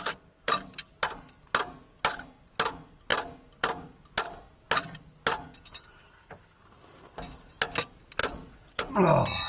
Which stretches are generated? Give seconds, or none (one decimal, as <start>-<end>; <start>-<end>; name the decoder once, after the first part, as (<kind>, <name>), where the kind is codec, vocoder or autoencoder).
8.2-8.9 (vocoder, Vocos)